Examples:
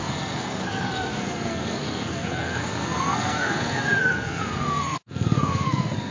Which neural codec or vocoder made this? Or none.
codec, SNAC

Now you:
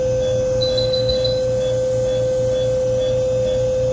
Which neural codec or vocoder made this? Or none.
none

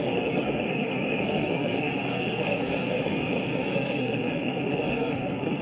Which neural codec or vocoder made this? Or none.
codec, SNAC